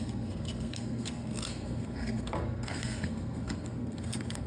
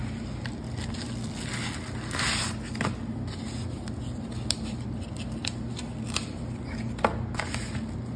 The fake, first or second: first